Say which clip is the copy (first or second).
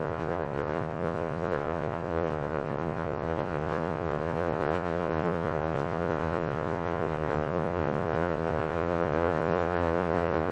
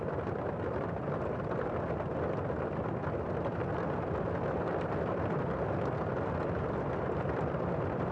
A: first